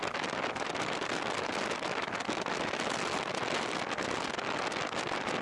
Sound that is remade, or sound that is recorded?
recorded